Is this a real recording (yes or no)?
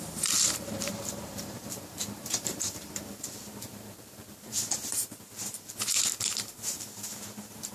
no